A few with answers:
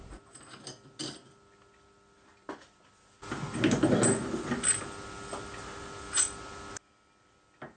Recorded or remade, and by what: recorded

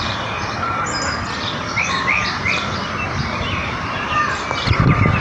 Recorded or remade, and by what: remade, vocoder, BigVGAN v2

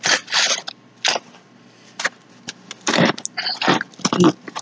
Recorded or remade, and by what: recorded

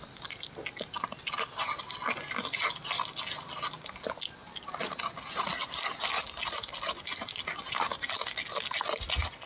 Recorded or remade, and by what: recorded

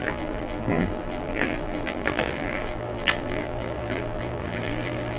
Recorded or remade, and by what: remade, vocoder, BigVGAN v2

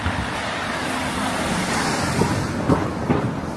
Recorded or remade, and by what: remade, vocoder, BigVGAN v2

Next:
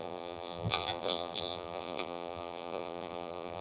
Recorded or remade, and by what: remade, vocoder, BigVGAN v2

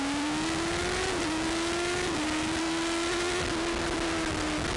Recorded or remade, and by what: recorded